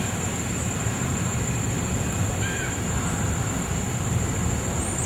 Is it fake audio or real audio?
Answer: fake